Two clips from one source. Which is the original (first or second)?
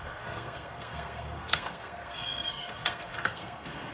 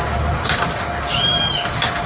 second